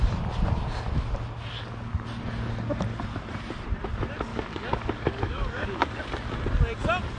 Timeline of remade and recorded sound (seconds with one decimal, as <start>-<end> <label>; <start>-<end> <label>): 0.0-4.3 recorded; 4.3-6.0 remade; 6.0-7.2 recorded